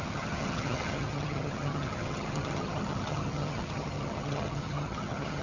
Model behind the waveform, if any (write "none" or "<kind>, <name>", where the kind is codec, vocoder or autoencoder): vocoder, HiFi-GAN